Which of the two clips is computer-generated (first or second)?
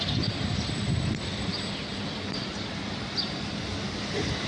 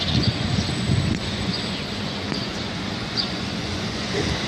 second